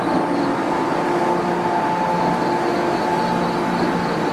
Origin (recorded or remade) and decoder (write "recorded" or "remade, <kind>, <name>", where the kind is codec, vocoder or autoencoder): recorded